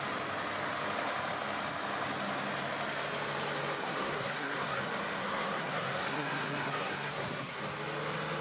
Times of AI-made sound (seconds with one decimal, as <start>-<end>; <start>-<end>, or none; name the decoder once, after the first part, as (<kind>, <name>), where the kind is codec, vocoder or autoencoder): 3.8-4.8 (codec, SNAC); 5.2-7.6